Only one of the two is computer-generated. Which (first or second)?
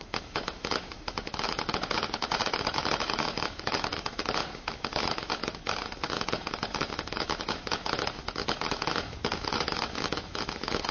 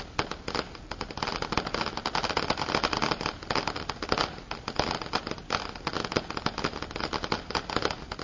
first